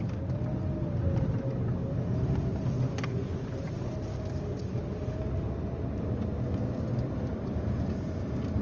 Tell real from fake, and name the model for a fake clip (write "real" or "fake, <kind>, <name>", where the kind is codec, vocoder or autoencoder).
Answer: real